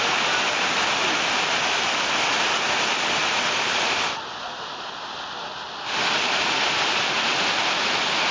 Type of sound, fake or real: real